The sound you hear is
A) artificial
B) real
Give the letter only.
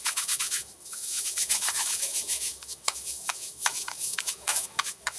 A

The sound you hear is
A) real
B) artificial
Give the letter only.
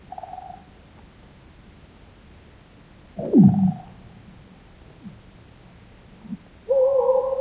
A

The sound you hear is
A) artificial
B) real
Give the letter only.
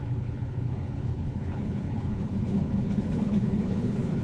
A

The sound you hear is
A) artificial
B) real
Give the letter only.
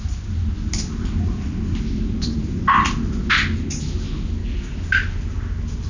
B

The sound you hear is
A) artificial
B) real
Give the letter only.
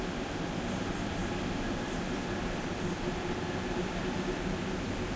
A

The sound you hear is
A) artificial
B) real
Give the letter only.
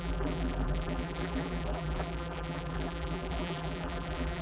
A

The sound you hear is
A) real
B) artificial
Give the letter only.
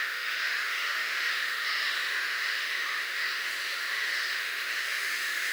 B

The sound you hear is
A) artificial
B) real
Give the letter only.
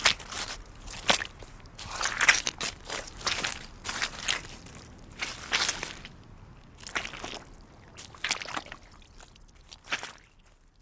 B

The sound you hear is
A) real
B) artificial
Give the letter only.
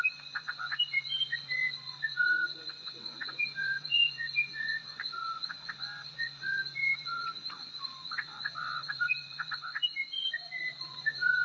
B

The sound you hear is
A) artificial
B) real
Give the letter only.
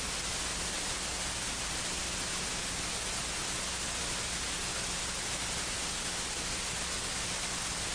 B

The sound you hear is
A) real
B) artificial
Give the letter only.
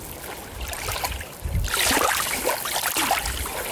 B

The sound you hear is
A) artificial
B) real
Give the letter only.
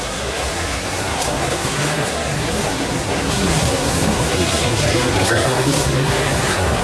A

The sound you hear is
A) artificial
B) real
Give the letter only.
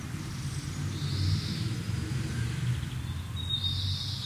B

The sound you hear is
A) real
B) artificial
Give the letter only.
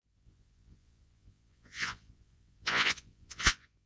B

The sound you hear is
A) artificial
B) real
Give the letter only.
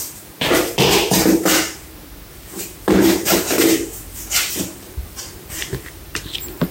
A